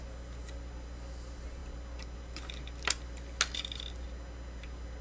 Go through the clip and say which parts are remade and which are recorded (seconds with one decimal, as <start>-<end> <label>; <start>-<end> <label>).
0.0-5.0 recorded